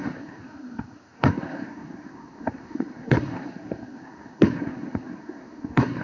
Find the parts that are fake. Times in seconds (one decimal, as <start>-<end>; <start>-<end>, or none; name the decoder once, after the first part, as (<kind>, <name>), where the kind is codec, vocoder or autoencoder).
0.0-6.0 (codec, SNAC)